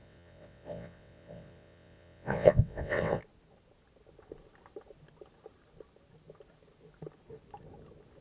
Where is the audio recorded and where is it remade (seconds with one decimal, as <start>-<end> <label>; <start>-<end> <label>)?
0.0-3.2 remade; 3.2-8.2 recorded